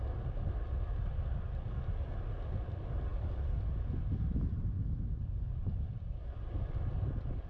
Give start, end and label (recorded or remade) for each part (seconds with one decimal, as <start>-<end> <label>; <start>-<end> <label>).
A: 0.0-7.5 recorded